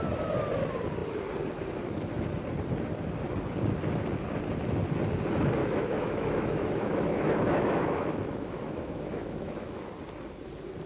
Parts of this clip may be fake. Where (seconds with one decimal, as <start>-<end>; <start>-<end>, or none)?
5.6-9.9